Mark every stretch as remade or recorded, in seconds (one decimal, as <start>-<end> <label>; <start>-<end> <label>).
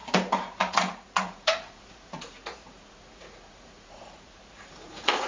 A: 0.0-5.3 remade